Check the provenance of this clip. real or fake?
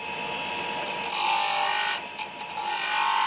real